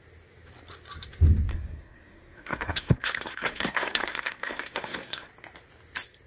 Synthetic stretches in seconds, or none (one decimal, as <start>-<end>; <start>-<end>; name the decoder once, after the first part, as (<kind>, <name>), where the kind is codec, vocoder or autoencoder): 1.5-5.3 (codec, SNAC)